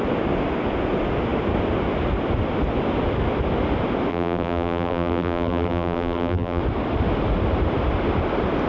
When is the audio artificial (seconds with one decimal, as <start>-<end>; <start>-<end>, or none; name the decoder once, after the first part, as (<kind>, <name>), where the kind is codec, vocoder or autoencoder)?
4.1-6.6 (vocoder, BigVGAN v2)